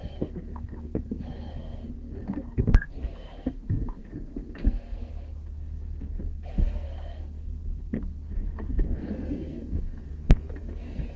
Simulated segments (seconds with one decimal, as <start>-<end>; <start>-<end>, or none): 0.0-11.2